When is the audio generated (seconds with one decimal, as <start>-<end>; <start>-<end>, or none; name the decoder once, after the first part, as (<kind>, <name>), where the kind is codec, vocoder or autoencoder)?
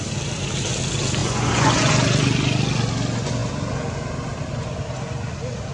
1.2-1.9 (vocoder, Vocos)